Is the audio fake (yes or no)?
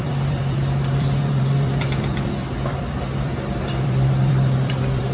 yes